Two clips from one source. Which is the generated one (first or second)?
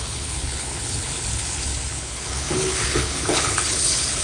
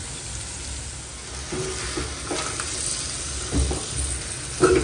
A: first